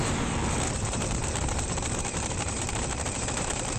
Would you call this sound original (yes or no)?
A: no